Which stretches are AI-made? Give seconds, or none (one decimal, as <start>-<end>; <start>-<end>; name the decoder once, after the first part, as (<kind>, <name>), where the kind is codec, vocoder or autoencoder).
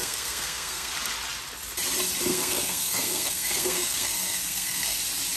0.0-0.9 (codec, SNAC); 2.3-5.0